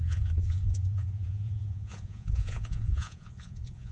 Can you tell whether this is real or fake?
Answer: fake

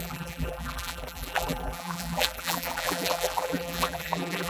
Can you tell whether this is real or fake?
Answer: fake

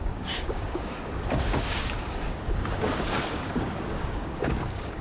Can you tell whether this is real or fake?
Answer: fake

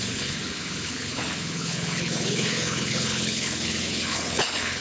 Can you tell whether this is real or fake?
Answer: fake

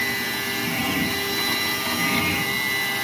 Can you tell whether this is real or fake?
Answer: real